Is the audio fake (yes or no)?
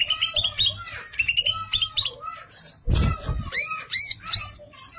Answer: no